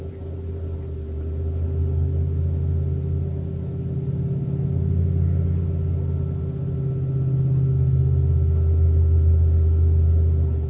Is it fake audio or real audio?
real